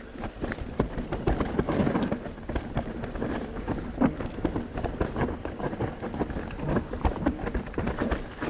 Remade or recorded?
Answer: remade